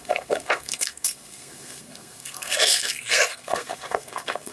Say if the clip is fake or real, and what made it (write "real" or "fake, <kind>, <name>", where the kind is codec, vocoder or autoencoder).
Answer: fake, codec, SNAC